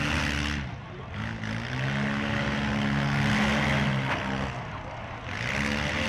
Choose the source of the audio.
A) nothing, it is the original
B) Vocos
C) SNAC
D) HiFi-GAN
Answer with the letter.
A